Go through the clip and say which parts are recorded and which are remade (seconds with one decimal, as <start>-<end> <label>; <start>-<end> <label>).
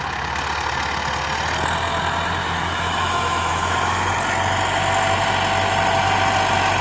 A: 0.0-2.4 recorded; 2.4-4.1 remade; 4.1-6.8 recorded